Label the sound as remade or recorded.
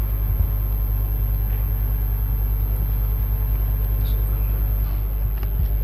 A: recorded